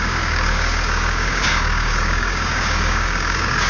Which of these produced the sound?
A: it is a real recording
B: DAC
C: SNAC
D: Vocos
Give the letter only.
B